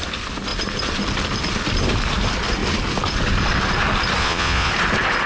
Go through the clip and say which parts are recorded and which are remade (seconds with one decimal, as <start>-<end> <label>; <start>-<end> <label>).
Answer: 0.0-4.2 recorded; 4.2-4.7 remade; 4.7-5.3 recorded